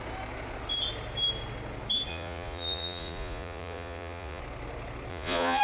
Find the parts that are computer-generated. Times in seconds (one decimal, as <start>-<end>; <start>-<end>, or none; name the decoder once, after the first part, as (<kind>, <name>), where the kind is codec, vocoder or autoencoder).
2.1-4.4 (vocoder, Vocos); 5.1-5.6